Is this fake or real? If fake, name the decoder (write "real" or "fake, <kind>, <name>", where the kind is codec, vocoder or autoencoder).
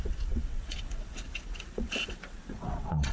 fake, vocoder, WaveNeXt